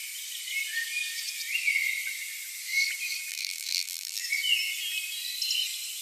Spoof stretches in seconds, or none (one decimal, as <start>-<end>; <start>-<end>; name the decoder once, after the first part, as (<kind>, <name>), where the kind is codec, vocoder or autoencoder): 3.3-4.2 (vocoder, BigVGAN v2)